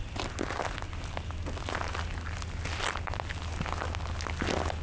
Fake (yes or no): no